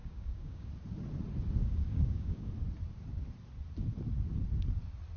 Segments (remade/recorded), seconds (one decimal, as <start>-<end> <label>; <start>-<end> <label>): 0.0-0.7 remade; 0.7-1.6 recorded; 1.6-2.5 remade; 2.5-5.2 recorded